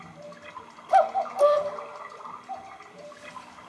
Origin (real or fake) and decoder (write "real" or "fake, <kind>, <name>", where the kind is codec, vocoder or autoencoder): real